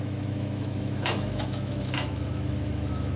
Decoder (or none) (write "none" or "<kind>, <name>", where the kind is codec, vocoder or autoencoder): autoencoder, DAC-VAE